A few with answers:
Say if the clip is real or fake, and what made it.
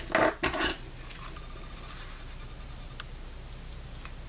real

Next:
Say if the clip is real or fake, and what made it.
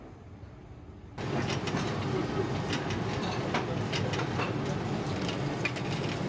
real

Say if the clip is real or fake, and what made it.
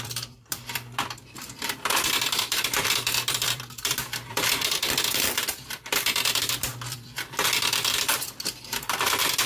fake, vocoder, BigVGAN v2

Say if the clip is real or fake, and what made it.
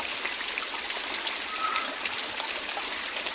real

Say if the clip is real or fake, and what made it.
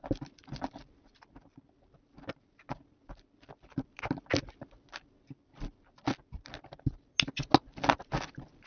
real